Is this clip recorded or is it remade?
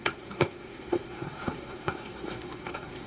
remade